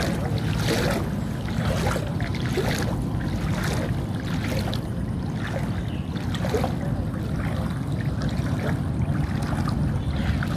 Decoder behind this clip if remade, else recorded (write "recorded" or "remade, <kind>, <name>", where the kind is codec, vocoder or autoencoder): recorded